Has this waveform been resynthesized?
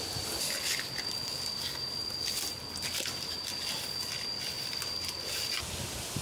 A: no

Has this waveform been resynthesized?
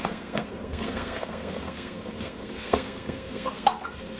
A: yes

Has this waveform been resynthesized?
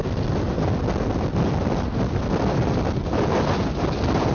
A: no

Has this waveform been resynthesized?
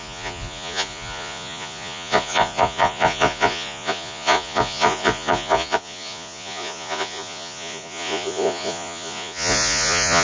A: yes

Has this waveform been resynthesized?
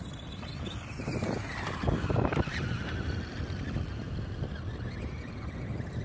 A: no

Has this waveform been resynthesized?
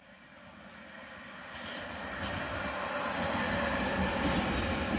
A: no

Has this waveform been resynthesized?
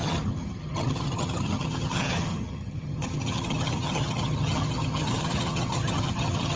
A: yes